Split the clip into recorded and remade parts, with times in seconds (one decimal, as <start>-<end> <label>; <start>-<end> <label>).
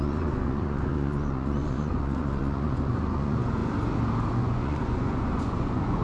0.0-3.6 remade; 3.6-4.3 recorded; 4.3-6.0 remade